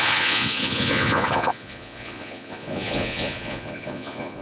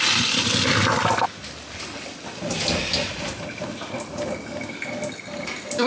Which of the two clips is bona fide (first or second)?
second